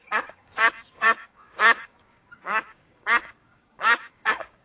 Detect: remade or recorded remade